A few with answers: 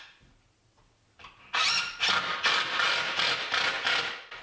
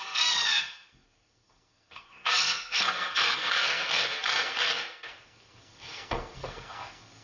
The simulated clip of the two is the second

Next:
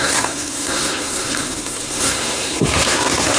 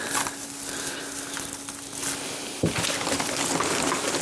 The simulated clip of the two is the first